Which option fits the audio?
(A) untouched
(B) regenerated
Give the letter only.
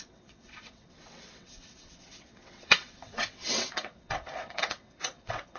B